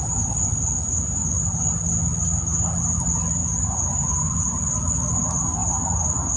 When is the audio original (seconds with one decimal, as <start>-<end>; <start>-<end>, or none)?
0.0-6.4